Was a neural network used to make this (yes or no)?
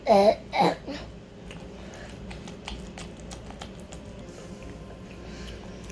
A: no